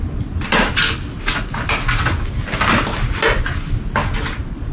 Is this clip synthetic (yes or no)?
no